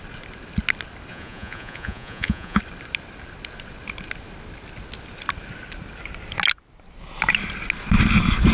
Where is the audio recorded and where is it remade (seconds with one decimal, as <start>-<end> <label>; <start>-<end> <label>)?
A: 0.0-1.1 recorded; 1.1-2.6 remade; 2.6-8.5 recorded